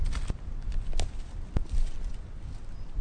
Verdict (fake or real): real